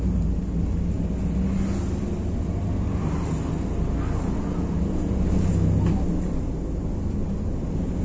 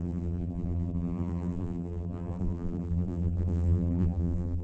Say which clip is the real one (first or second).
first